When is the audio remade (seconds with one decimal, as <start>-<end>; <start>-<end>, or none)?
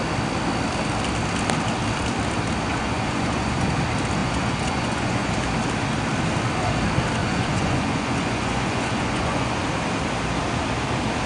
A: 2.7-3.7; 4.2-5.3; 7.2-9.6